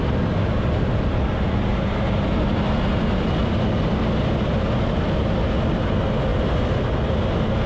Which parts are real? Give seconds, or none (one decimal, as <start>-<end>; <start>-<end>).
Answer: 0.0-7.7